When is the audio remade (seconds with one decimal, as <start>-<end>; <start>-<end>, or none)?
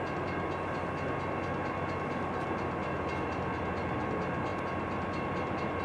none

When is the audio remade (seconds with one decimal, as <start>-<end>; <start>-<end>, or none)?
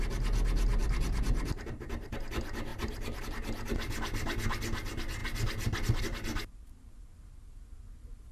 0.8-2.1; 2.7-3.2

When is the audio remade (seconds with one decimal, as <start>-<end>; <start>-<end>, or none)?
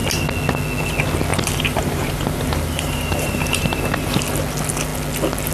1.3-4.2